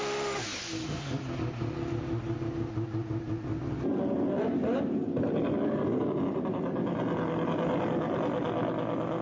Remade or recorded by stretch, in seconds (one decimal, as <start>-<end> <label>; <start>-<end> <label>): 0.0-9.2 recorded

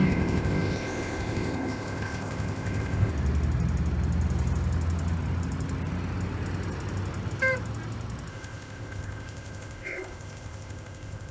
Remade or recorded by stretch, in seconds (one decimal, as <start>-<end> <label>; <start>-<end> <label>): 0.0-3.1 remade; 3.1-8.3 recorded; 8.3-11.3 remade

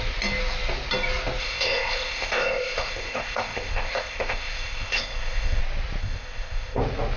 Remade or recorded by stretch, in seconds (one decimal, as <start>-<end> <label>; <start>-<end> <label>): 0.0-1.4 recorded; 1.4-5.6 remade; 5.6-6.0 recorded; 6.0-6.8 remade; 6.8-7.2 recorded

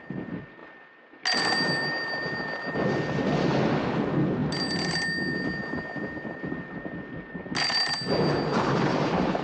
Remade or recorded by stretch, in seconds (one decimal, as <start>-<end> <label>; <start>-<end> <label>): 0.0-9.4 recorded